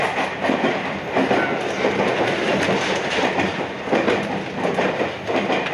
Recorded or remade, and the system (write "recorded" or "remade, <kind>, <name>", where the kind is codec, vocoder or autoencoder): recorded